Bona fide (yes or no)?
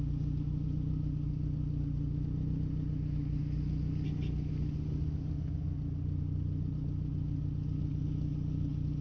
yes